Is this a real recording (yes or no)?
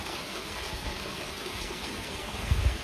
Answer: no